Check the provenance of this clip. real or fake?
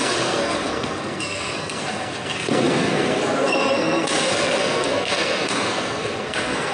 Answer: fake